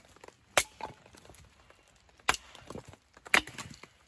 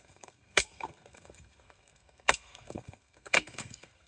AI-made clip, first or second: second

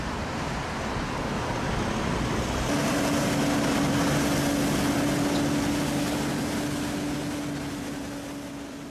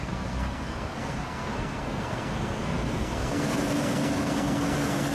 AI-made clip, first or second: second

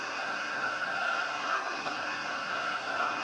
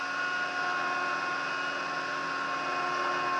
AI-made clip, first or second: first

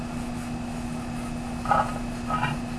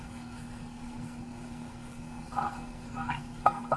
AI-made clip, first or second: second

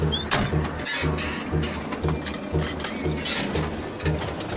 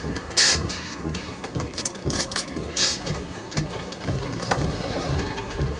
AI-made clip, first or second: second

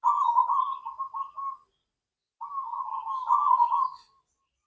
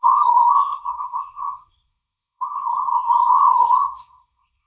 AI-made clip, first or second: second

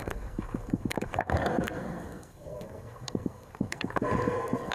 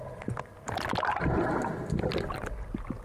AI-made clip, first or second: first